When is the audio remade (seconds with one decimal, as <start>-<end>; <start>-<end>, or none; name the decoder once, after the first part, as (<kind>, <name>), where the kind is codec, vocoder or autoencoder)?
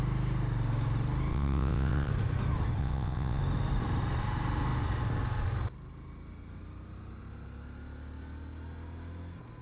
1.3-2.1 (vocoder, WaveNeXt); 2.8-3.4